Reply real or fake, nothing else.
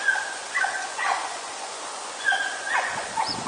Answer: fake